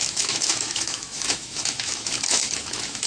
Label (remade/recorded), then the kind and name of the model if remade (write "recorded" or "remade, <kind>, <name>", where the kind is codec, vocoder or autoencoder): remade, autoencoder, DAC-VAE